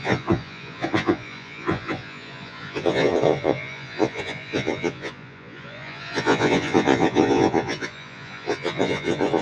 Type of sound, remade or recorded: remade